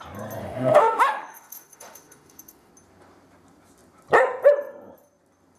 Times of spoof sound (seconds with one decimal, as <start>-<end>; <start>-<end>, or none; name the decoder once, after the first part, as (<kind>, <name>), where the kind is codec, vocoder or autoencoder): 0.4-2.7 (autoencoder, DAC-VAE)